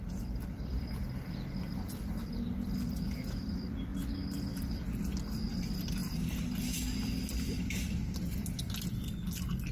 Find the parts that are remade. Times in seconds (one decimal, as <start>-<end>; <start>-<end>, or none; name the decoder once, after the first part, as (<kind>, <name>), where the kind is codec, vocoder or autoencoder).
none